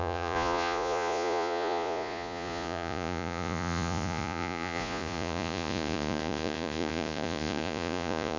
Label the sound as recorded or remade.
remade